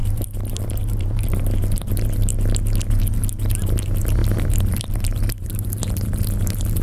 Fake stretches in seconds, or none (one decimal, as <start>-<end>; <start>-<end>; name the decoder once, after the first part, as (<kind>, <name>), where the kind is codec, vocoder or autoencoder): 0.0-2.3 (vocoder, BigVGAN v2); 3.0-6.8

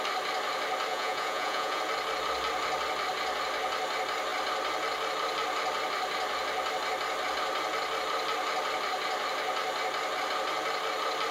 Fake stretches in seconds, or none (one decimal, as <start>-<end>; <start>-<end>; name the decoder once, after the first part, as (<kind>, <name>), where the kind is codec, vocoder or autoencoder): 0.9-1.8 (vocoder, Vocos)

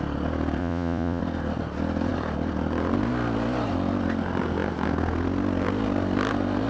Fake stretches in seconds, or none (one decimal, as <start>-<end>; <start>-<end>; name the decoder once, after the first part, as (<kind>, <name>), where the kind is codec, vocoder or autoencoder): 0.6-1.2 (vocoder, Vocos)

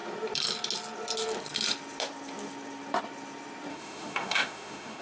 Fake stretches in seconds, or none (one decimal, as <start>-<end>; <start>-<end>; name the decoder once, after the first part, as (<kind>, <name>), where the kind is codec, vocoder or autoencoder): 3.7-5.0 (autoencoder, DAC-VAE)

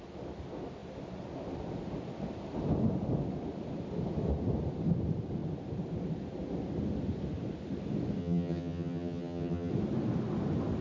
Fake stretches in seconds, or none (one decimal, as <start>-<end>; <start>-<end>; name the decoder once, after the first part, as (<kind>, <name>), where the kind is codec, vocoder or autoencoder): 8.2-9.7 (vocoder, HiFi-GAN)

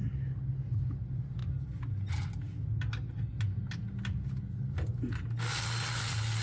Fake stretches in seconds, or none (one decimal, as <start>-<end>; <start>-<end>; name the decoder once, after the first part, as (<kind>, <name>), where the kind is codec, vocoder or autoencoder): none

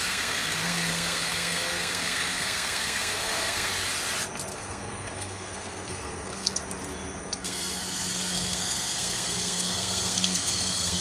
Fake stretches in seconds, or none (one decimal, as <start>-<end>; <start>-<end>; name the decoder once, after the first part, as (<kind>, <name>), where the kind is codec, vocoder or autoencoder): 0.0-3.7 (codec, SNAC); 4.5-6.6; 7.2-11.0

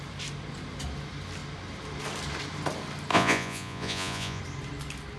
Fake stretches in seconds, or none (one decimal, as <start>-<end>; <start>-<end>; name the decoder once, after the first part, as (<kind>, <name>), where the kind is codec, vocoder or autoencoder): 3.1-4.4 (vocoder, Vocos)